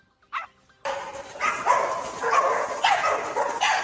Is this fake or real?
fake